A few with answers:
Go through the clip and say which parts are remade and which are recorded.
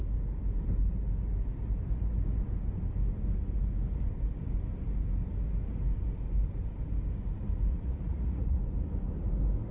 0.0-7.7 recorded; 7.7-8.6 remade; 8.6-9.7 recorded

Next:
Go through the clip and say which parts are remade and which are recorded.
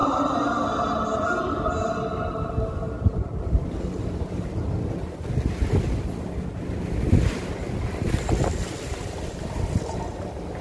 0.0-10.6 recorded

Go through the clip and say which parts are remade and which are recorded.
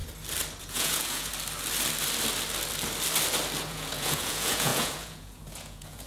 0.0-0.6 recorded; 0.6-1.3 remade; 1.3-3.7 recorded; 3.7-6.1 remade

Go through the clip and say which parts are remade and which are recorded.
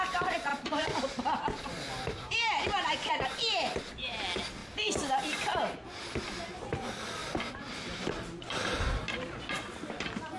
0.0-0.5 recorded; 0.5-3.1 remade; 3.1-7.2 recorded; 7.2-8.4 remade; 8.4-10.4 recorded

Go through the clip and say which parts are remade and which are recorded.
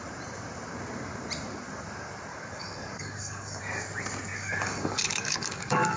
0.0-2.3 recorded; 2.3-3.6 remade; 3.6-4.3 recorded; 4.3-6.0 remade